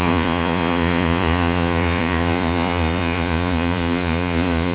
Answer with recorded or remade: remade